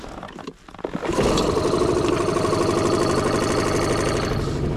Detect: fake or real real